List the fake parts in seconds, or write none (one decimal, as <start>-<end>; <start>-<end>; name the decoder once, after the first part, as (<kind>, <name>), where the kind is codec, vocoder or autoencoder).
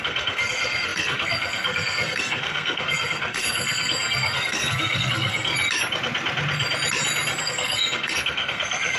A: 0.0-5.5 (codec, SNAC); 7.4-9.0